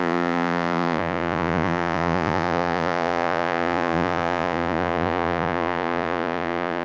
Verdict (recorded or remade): remade